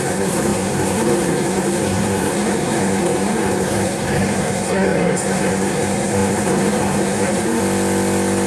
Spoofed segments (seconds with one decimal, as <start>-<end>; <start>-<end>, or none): 0.0-7.6